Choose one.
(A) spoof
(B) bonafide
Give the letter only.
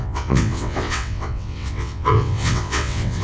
A